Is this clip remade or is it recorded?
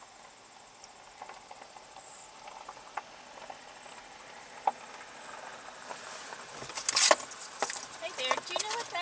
recorded